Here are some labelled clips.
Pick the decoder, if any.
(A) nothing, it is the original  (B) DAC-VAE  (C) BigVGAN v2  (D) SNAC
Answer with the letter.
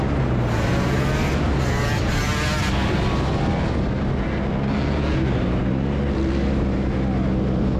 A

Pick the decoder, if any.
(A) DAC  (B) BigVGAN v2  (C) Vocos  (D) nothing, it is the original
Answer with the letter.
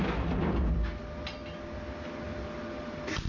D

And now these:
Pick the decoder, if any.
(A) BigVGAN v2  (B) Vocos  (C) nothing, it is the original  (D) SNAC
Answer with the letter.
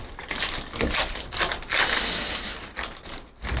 C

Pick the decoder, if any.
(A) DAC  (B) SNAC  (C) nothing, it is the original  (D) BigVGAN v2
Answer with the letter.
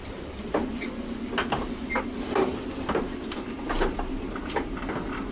C